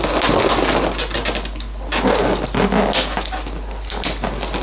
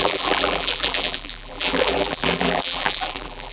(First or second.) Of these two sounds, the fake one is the second